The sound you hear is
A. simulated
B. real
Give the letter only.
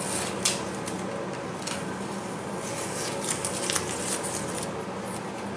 B